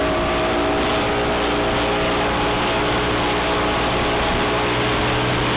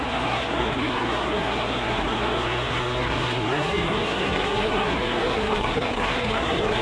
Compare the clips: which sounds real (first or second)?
first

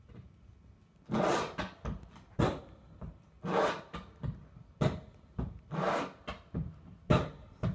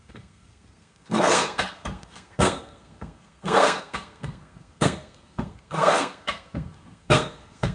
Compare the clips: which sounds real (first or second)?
first